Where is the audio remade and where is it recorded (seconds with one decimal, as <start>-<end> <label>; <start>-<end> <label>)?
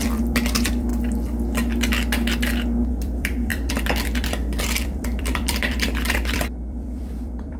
0.0-0.9 remade; 0.9-2.9 recorded; 2.9-7.6 remade